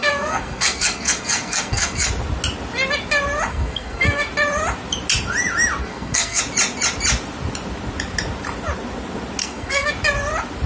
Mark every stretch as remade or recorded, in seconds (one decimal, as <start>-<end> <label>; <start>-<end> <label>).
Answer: 0.0-2.1 remade; 2.1-3.5 recorded; 3.5-4.3 remade; 4.3-5.8 recorded; 5.8-6.4 remade; 6.4-9.4 recorded; 9.4-9.9 remade; 9.9-10.7 recorded

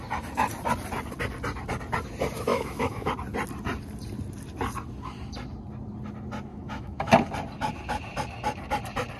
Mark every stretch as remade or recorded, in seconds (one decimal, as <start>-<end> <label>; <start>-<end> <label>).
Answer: 0.0-2.5 recorded; 2.5-3.1 remade; 3.1-6.5 recorded; 6.5-7.1 remade; 7.1-9.2 recorded

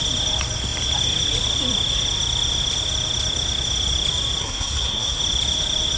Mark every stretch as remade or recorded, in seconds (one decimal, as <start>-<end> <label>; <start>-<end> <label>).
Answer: 0.0-4.4 recorded; 4.4-5.2 remade; 5.2-6.0 recorded

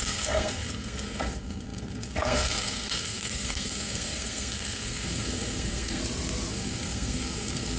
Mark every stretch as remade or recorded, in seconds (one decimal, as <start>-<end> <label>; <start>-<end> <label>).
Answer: 0.0-6.0 remade; 6.0-6.5 recorded; 6.5-7.8 remade

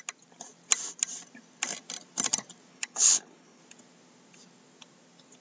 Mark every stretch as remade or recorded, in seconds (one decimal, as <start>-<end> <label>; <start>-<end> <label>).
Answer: 0.0-2.7 recorded; 2.7-3.6 remade; 3.6-5.4 recorded

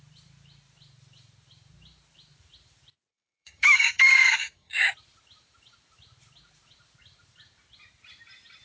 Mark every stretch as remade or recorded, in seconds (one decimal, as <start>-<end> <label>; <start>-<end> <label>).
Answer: 0.0-3.1 recorded; 3.1-4.9 remade; 4.9-8.6 recorded

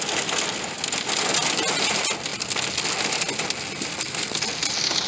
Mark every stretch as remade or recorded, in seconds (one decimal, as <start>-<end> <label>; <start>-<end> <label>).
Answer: 0.0-5.1 recorded

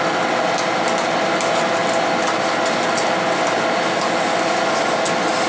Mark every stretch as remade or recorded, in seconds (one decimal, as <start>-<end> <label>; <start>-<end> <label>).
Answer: 0.0-5.5 recorded